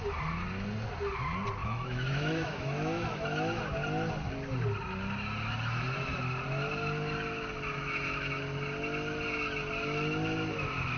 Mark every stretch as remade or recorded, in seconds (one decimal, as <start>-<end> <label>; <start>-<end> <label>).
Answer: 0.0-1.6 recorded; 1.6-3.6 remade; 3.6-7.7 recorded; 7.7-8.4 remade; 8.4-11.0 recorded

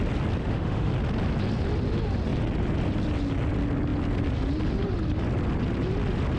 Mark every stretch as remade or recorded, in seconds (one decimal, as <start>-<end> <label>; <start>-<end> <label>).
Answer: 0.0-0.4 recorded; 0.4-0.9 remade; 0.9-6.4 recorded